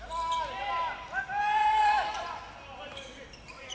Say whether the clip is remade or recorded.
recorded